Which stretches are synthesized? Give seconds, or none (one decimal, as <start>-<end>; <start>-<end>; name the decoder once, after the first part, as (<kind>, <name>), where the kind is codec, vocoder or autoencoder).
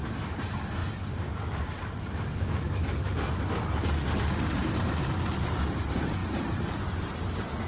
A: none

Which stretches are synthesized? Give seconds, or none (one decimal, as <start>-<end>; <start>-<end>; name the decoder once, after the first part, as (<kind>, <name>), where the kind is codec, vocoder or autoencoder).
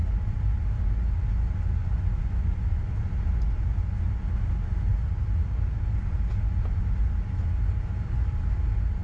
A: 1.8-2.9 (vocoder, Vocos)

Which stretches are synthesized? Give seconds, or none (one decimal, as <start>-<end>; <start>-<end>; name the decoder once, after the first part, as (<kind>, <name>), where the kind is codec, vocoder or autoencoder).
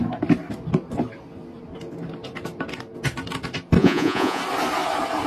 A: 3.8-4.4 (vocoder, Vocos)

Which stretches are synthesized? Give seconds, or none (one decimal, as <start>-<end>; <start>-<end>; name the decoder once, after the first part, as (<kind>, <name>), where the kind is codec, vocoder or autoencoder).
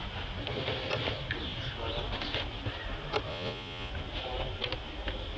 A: 3.3-3.9 (vocoder, Vocos)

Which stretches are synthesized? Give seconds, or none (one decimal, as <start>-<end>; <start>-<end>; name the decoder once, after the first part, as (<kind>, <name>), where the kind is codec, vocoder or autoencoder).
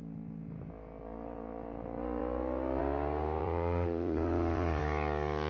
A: 3.4-4.8 (vocoder, Vocos)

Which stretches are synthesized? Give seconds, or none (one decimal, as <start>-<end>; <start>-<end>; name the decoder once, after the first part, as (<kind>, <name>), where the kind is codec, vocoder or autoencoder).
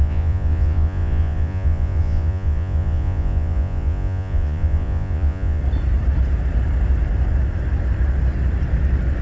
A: 0.0-5.6 (vocoder, Vocos)